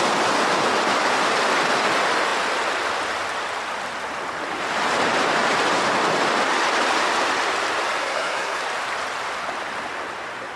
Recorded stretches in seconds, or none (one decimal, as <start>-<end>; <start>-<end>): 0.0-8.0; 8.6-10.6